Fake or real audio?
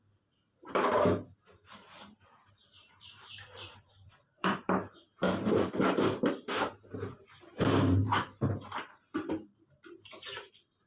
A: fake